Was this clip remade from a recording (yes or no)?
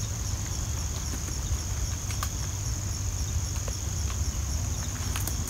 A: no